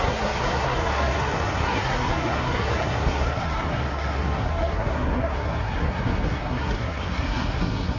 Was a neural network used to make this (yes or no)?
yes